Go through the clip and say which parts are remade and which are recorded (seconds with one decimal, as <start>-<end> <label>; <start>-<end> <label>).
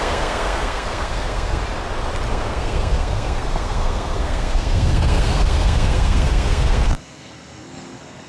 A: 0.0-1.6 remade; 1.6-2.3 recorded; 2.3-8.3 remade